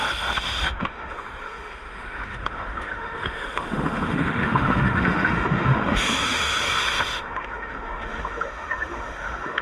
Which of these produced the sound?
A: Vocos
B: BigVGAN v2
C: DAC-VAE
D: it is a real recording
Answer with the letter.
C